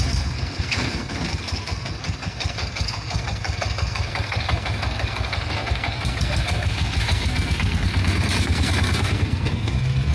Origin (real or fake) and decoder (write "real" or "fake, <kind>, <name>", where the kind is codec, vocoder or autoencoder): fake, codec, SNAC